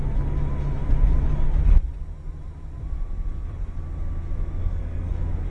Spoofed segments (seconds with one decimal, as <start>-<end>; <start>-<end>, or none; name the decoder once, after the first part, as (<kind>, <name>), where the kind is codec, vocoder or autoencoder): 4.6-5.1 (codec, SNAC)